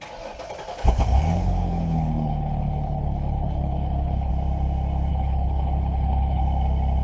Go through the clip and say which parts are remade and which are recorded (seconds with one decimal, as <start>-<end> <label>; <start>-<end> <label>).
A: 0.0-0.7 recorded; 0.7-4.3 remade; 4.3-5.1 recorded; 5.1-6.4 remade; 6.4-7.0 recorded